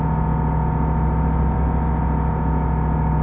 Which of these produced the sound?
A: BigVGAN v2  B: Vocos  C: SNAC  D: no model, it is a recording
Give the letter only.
D